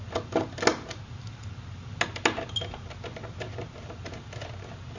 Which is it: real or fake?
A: real